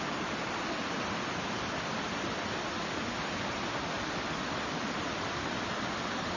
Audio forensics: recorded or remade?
recorded